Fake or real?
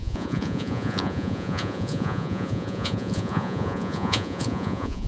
fake